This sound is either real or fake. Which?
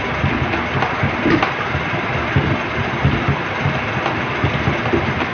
real